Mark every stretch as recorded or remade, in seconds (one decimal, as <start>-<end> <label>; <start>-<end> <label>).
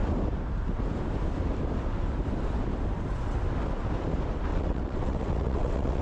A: 0.0-4.5 recorded; 4.5-6.0 remade